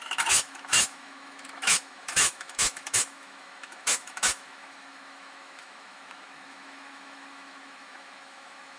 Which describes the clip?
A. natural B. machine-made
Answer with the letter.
B